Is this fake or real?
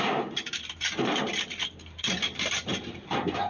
fake